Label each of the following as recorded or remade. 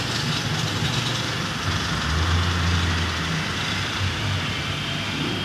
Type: recorded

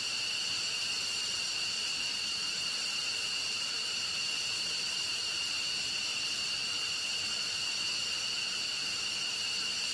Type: recorded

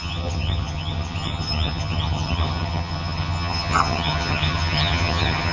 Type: remade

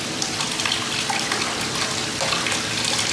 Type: recorded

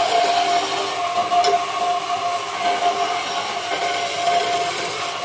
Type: recorded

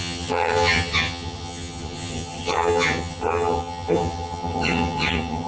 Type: remade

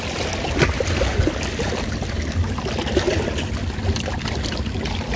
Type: recorded